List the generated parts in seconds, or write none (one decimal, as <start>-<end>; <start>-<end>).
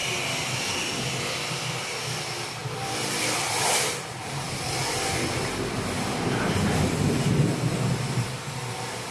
2.6-4.8